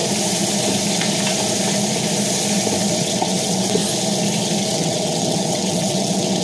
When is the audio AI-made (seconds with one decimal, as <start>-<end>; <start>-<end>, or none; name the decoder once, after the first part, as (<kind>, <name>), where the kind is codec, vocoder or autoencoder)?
2.9-3.8 (vocoder, WaveNeXt); 4.7-6.4